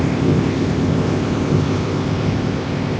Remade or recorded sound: remade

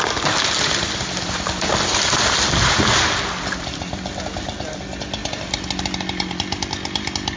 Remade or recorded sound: recorded